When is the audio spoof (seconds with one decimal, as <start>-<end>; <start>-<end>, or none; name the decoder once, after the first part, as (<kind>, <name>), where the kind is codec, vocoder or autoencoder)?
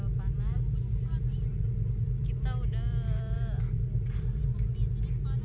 none